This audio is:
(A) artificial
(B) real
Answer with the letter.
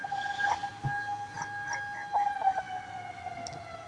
B